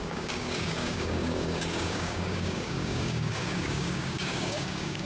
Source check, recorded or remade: remade